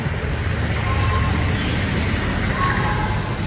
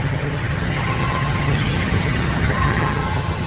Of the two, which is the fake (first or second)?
second